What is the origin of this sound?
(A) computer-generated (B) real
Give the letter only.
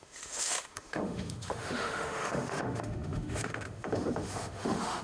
A